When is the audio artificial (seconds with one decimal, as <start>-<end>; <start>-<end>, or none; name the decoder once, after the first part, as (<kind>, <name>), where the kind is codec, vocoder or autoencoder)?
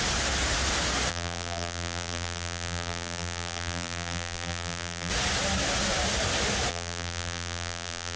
1.1-5.1 (vocoder, BigVGAN v2); 6.7-8.2